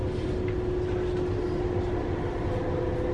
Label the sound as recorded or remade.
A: recorded